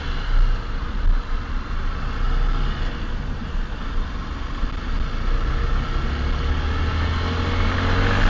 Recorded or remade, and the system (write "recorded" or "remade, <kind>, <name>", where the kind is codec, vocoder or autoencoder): recorded